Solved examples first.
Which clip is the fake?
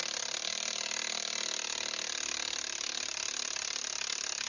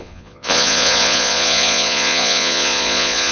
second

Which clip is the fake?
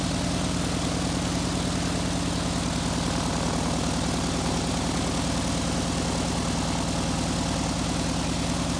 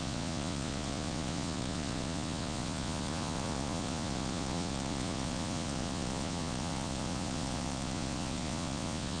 second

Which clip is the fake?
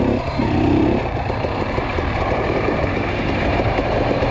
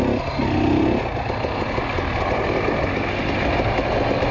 first